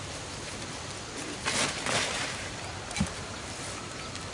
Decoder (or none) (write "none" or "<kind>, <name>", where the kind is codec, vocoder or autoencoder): none